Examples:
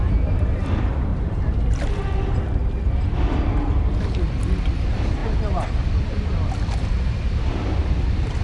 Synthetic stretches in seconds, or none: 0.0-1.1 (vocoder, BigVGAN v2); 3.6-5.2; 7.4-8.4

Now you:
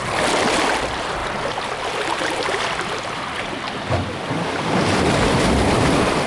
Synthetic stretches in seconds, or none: none

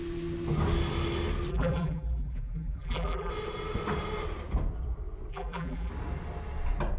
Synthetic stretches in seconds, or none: 1.5-3.3 (vocoder, BigVGAN v2); 5.3-5.9